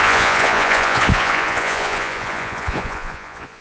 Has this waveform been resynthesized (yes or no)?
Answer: yes